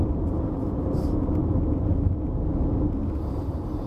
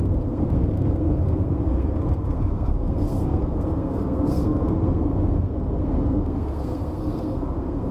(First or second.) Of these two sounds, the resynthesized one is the second